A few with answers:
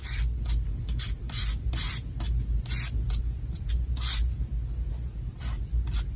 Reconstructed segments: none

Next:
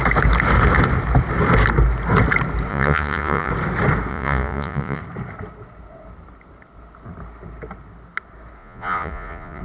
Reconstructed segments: 2.7-3.5 (vocoder, Vocos); 4.1-5.0; 8.6-9.6

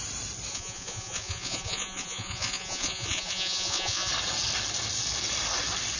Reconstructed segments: 0.5-4.1 (vocoder, Vocos)